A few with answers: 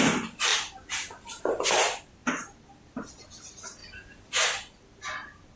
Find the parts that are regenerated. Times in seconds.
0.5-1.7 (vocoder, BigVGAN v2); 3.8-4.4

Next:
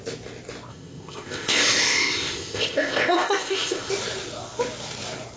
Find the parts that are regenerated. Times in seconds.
0.7-3.9 (codec, ZipCodec)

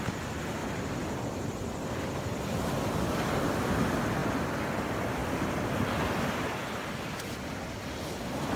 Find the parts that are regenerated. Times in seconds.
4.2-4.8 (vocoder, BigVGAN v2)

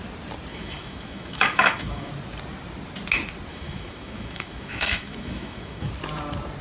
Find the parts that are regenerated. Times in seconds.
0.5-2.1 (autoencoder, DAC-VAE); 3.5-5.9

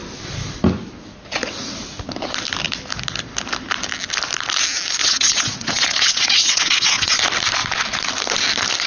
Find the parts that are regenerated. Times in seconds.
5.0-7.1 (vocoder, WaveNeXt)

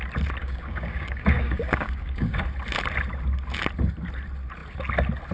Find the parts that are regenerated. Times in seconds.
0.4-2.4 (codec, DAC)